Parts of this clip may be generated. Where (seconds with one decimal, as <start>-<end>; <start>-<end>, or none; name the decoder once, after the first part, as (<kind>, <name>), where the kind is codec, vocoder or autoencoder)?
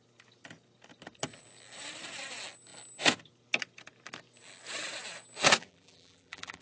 5.6-6.6 (vocoder, BigVGAN v2)